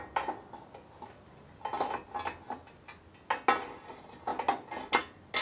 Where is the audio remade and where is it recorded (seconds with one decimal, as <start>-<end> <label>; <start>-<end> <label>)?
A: 0.0-5.4 recorded